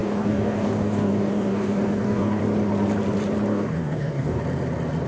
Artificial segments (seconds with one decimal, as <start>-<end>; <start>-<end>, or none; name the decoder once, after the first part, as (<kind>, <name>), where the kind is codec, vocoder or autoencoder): 0.0-2.4 (codec, DAC); 3.5-4.4